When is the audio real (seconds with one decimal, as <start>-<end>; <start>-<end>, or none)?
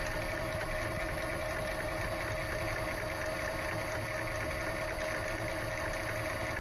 0.0-6.6